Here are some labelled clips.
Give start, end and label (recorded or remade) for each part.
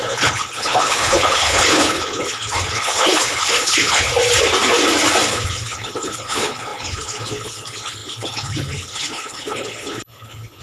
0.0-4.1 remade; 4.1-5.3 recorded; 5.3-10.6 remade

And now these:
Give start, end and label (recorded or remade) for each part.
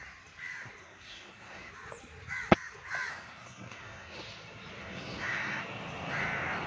0.0-0.8 recorded; 0.8-1.7 remade; 1.7-3.1 recorded; 3.1-4.2 remade; 4.2-4.8 recorded; 4.8-5.6 remade; 5.6-6.7 recorded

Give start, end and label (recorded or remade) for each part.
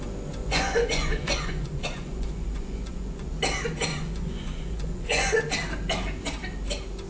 0.0-0.4 recorded; 0.4-3.3 remade; 3.3-3.9 recorded; 3.9-5.4 remade; 5.4-7.1 recorded